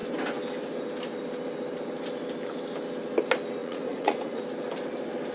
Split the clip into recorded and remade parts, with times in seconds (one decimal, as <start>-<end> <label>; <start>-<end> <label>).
0.0-3.6 recorded; 3.6-4.4 remade; 4.4-5.3 recorded